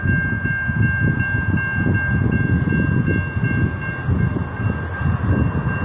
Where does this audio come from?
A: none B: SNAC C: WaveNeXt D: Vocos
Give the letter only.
A